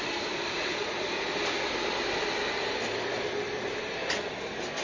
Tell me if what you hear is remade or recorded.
recorded